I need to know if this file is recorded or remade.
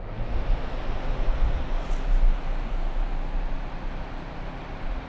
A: recorded